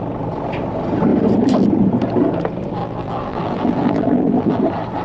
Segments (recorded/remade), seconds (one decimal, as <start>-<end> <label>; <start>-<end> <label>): 0.0-2.8 recorded; 2.8-4.6 remade; 4.6-5.0 recorded